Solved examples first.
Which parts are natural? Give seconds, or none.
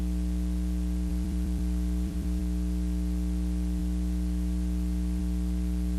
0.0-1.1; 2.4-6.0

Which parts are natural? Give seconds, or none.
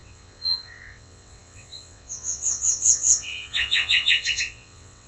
none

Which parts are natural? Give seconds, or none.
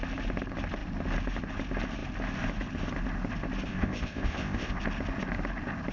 0.0-3.7; 4.8-5.9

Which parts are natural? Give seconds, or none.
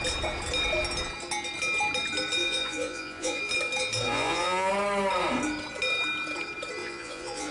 0.0-2.4; 3.4-4.1; 4.7-6.8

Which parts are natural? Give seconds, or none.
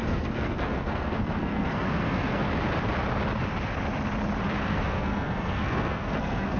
2.5-4.7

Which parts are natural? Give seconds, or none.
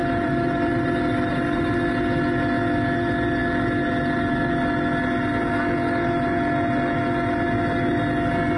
1.7-8.6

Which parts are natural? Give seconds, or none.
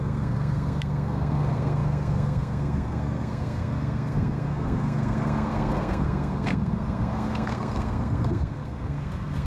none